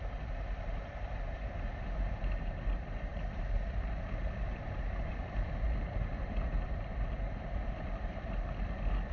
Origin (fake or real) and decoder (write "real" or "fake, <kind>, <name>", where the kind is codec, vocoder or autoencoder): fake, vocoder, BigVGAN v2